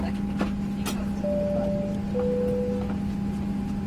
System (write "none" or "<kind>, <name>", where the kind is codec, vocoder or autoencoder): none